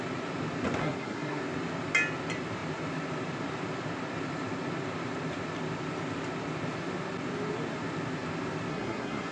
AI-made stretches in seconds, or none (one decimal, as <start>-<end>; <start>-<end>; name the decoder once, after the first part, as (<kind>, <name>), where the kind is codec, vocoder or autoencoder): 0.8-1.4 (codec, SNAC); 8.7-9.3